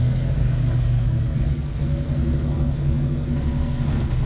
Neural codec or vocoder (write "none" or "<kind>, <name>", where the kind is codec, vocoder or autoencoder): codec, SNAC